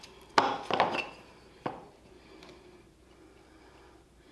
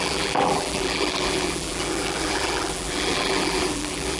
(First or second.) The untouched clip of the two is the first